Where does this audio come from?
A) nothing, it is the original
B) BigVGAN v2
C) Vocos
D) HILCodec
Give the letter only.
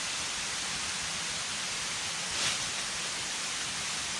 A